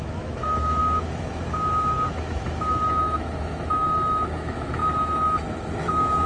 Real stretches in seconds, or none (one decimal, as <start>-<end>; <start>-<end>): none

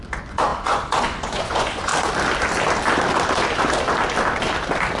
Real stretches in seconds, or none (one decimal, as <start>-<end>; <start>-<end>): 1.9-5.0

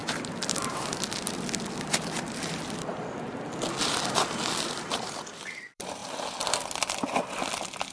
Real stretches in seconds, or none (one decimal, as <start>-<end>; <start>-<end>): 6.0-6.5